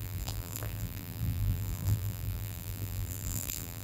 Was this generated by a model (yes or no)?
yes